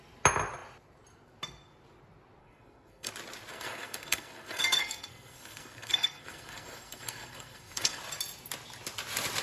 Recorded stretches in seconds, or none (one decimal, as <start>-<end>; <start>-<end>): 0.0-2.4; 3.1-3.5; 8.0-9.4